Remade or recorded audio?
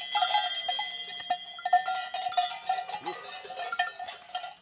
recorded